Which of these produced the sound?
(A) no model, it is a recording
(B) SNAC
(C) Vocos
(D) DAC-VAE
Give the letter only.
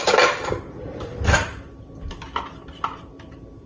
A